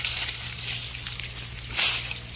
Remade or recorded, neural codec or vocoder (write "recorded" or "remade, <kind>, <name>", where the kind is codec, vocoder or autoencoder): recorded